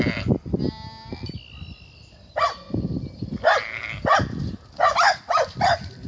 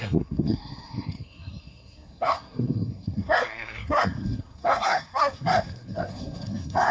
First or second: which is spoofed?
second